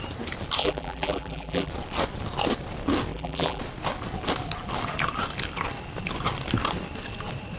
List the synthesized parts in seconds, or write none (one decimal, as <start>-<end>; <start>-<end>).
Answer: 0.6-1.7; 3.1-3.6